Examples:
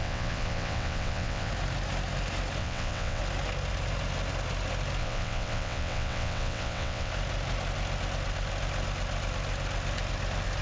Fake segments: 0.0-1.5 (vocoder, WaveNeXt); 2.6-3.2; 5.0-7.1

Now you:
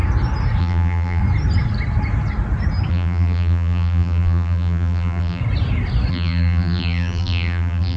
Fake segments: 0.6-1.2 (vocoder, BigVGAN v2); 2.9-5.4; 6.1-8.0

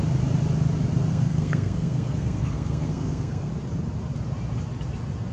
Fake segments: 1.1-3.5 (codec, SNAC)

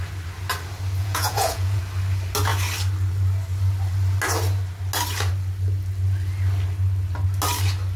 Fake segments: 1.0-1.8 (vocoder, Vocos)